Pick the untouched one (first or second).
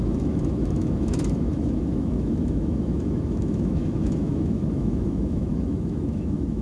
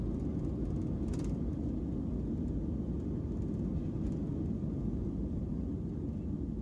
second